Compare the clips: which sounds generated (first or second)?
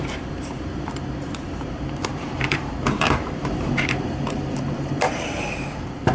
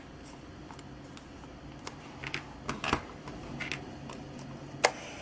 first